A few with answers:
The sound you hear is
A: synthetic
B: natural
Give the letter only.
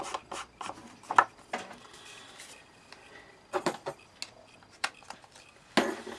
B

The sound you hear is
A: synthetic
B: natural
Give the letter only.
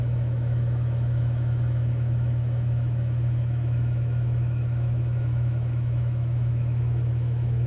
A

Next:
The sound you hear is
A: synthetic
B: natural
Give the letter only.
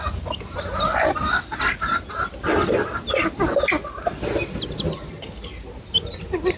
B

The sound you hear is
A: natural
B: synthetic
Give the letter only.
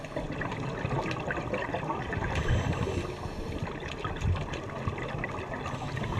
A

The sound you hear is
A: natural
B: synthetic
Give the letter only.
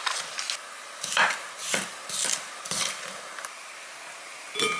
A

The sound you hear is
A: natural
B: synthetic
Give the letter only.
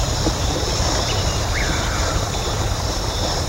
A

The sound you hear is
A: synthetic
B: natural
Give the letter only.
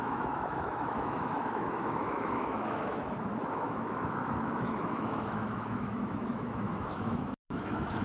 A